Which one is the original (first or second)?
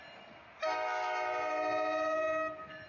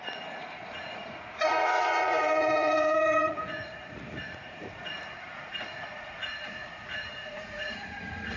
first